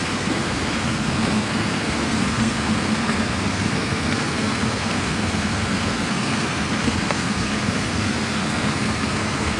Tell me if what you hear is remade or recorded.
remade